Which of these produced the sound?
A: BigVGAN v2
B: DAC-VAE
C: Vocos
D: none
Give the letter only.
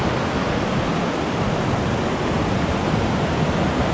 D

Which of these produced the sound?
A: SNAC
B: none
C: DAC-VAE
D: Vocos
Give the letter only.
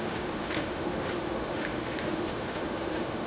C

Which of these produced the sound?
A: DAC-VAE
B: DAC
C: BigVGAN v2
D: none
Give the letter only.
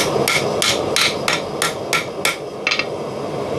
D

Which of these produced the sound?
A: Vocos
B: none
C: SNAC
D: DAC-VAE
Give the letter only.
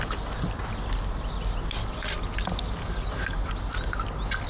B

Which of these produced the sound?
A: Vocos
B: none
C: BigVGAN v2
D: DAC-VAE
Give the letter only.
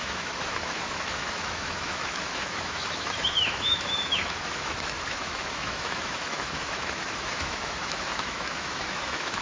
D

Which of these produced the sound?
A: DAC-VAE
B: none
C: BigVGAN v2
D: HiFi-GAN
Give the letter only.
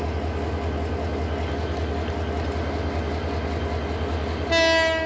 B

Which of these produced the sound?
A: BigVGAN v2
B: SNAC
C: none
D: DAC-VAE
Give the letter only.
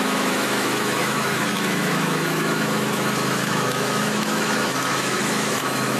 D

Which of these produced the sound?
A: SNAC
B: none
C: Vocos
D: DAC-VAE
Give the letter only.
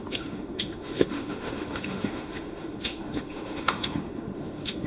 D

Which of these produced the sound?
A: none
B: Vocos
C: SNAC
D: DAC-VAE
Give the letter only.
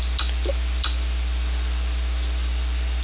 A